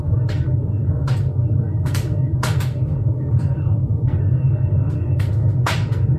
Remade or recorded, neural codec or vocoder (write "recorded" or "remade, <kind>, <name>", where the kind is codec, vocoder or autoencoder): remade, codec, SNAC